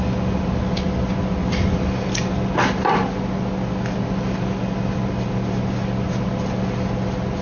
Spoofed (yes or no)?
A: no